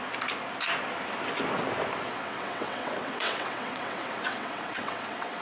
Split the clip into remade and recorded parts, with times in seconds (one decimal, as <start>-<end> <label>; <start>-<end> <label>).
0.0-2.1 recorded; 2.1-5.4 remade